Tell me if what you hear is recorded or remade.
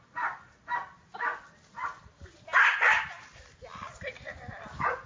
recorded